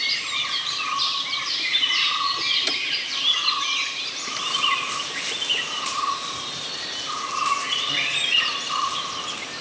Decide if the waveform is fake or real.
fake